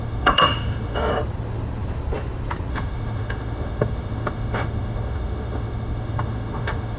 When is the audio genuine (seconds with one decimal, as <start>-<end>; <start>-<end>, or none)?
1.1-2.7